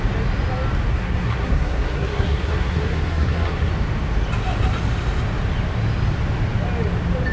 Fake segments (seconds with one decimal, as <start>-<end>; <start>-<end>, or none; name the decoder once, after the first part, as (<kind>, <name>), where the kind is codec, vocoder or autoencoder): 0.9-3.7 (codec, SNAC)

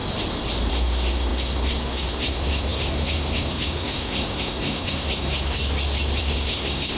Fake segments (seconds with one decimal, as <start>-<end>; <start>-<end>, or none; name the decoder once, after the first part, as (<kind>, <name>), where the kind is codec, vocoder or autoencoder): 0.7-5.6 (codec, SNAC); 6.2-7.0

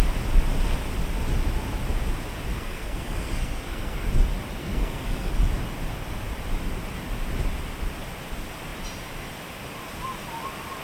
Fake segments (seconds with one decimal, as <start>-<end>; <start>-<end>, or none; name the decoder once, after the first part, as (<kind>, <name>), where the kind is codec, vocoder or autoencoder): 2.5-4.1 (codec, SNAC); 4.6-5.3

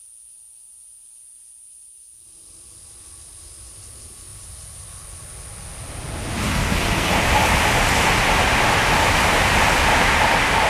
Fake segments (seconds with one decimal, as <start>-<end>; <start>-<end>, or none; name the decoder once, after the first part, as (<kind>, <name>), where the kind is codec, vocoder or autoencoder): 6.5-7.1 (codec, SNAC)

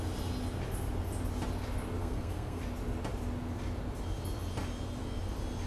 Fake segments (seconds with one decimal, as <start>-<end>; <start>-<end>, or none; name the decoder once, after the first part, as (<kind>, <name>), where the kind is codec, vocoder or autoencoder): 2.0-2.6 (codec, SNAC)